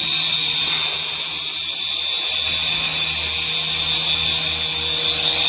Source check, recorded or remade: recorded